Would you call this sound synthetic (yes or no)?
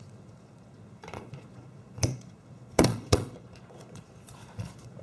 yes